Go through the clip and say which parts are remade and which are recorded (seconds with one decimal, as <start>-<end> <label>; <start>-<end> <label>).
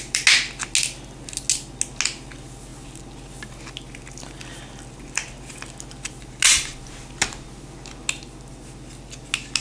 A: 0.0-9.6 recorded